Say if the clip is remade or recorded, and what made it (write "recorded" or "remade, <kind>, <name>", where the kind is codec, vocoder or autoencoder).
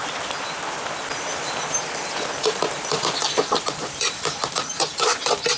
recorded